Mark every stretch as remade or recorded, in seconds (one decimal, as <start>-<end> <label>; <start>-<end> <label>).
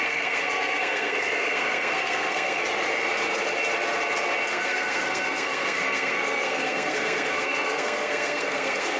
0.0-2.6 remade; 2.6-4.5 recorded; 4.5-9.0 remade